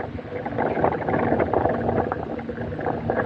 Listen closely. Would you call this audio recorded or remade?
recorded